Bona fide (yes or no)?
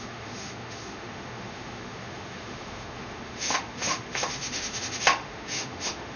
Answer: no